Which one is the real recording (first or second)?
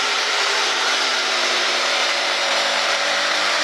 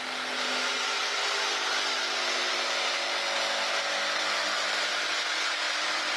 second